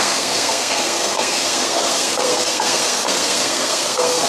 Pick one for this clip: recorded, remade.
remade